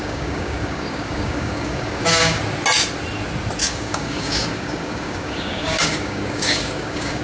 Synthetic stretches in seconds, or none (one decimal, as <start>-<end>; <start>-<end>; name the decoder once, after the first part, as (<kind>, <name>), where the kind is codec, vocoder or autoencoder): 0.0-2.4 (codec, DAC); 3.6-7.2